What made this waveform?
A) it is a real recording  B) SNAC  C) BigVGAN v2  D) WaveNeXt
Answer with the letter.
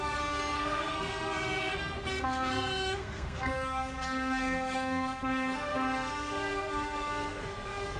B